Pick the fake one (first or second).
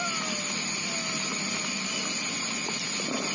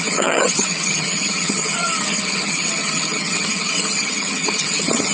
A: second